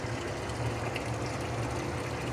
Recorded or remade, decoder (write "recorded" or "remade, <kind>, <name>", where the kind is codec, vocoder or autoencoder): recorded